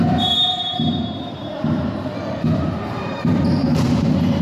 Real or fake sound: fake